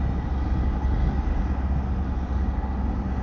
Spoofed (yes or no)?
no